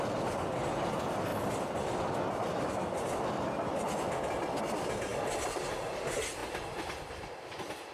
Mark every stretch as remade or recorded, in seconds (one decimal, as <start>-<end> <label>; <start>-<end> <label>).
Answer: 0.0-7.9 recorded